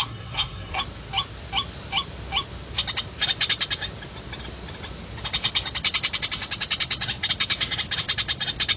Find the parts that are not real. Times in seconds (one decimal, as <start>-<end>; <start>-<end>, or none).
0.0-0.8